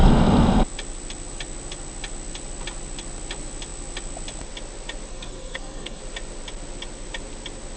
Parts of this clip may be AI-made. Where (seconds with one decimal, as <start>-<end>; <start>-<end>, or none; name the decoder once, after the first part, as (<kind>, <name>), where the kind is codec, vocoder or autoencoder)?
5.1-6.0 (codec, SNAC)